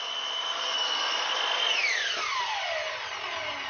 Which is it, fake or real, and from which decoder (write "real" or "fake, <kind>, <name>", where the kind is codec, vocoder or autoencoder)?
real